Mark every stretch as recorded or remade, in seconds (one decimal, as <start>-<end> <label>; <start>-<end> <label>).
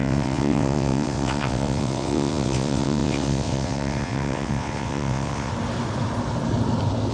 0.0-5.5 remade; 5.5-7.1 recorded